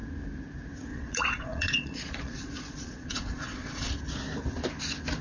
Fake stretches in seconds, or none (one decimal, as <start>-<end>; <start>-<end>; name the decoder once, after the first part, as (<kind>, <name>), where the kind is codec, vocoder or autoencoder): 0.9-4.0 (vocoder, Vocos)